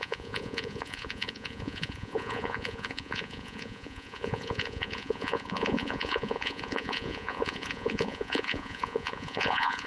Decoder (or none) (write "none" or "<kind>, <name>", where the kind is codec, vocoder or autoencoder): vocoder, Vocos